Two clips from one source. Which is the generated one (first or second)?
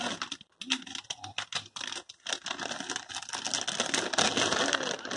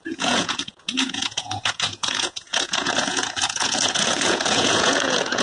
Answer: second